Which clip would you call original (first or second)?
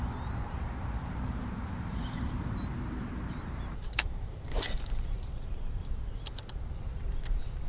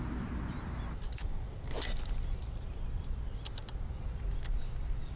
second